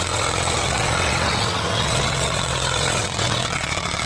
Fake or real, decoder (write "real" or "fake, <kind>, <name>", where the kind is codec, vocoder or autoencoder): fake, vocoder, WaveNeXt